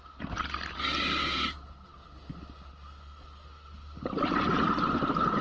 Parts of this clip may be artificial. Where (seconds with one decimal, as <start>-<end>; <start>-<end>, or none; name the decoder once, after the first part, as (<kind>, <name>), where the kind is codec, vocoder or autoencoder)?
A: none